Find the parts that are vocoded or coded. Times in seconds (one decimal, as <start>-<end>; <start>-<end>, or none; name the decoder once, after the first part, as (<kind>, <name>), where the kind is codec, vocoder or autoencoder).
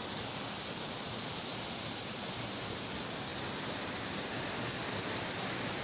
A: 1.5-2.4 (vocoder, BigVGAN v2); 3.3-4.5